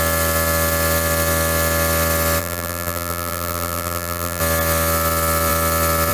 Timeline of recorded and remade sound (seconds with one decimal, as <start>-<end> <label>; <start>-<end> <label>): 0.0-2.4 recorded; 2.4-4.4 remade; 4.4-6.1 recorded